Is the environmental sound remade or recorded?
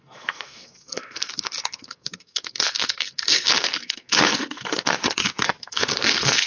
remade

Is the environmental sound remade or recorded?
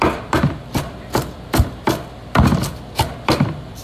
remade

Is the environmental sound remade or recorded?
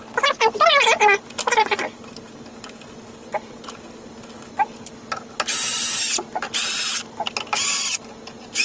recorded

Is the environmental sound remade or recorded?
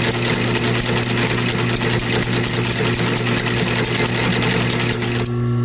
recorded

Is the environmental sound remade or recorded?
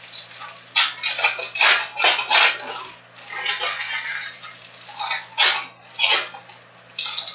recorded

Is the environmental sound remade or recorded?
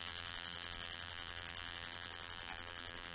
remade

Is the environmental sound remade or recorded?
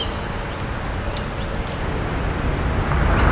recorded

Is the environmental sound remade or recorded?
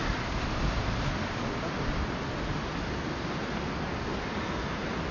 recorded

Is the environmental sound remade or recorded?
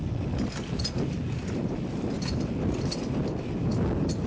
recorded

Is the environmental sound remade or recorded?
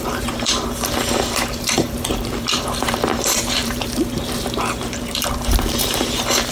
remade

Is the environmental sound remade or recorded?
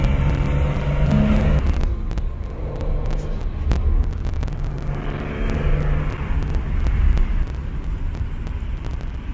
recorded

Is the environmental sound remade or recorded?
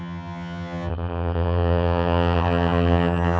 remade